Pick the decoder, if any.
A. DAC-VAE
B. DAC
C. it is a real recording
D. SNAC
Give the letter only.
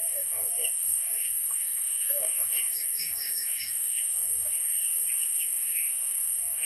B